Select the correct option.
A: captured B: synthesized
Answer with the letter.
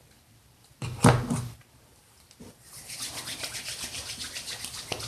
A